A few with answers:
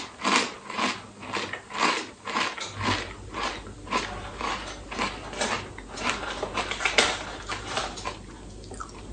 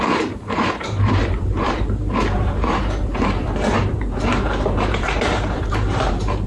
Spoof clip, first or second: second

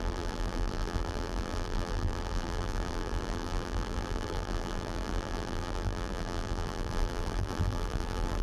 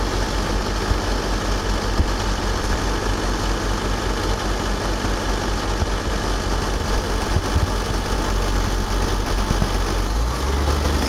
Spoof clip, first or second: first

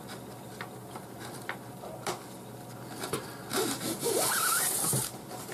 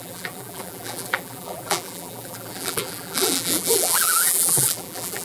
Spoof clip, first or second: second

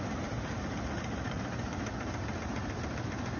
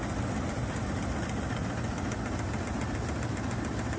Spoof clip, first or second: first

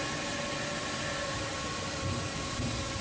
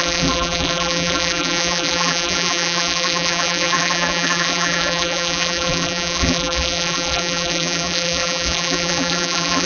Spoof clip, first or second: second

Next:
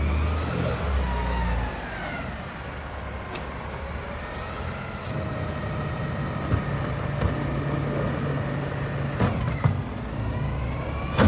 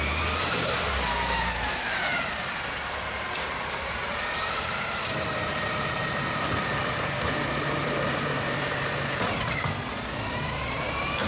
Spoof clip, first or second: second